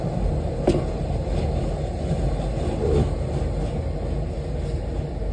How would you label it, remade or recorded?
recorded